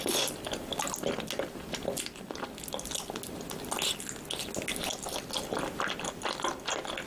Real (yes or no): yes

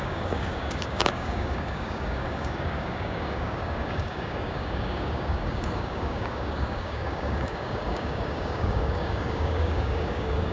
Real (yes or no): no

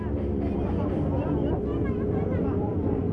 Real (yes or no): no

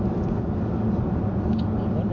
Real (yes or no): yes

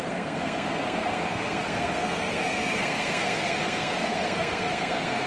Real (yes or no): no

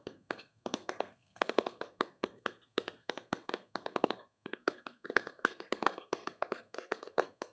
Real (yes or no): no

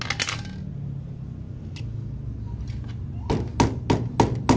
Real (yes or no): yes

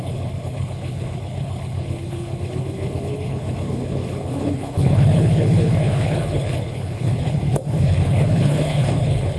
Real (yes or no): no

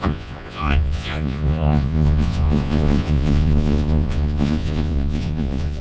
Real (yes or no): no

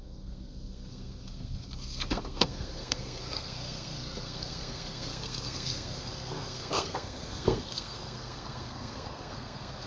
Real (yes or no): no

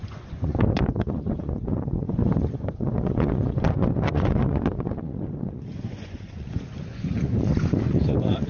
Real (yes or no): no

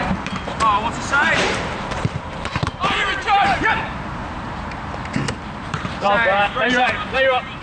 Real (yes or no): no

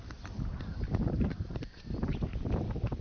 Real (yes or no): yes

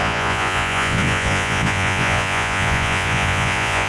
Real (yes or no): no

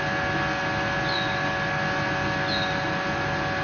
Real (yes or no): yes